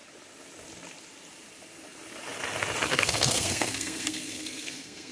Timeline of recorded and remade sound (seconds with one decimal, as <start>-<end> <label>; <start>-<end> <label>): 0.0-2.9 recorded; 2.9-5.1 remade

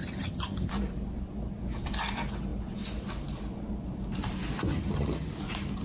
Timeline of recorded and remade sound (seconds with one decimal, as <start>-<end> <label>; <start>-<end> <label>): 0.0-0.7 remade; 0.7-4.7 recorded; 4.7-5.3 remade; 5.3-5.8 recorded

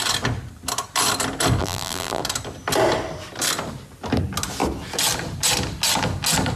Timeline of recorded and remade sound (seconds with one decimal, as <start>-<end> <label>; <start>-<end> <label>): 0.0-1.6 recorded; 1.6-2.2 remade; 2.2-6.6 recorded

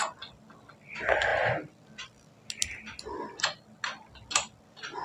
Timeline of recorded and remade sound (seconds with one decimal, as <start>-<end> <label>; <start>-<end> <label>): 0.0-5.0 recorded